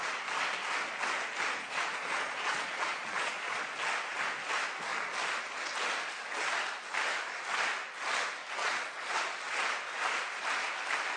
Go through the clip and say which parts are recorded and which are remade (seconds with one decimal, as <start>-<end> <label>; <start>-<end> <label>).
0.0-1.6 recorded; 1.6-3.6 remade; 3.6-8.6 recorded; 8.6-9.2 remade; 9.2-11.2 recorded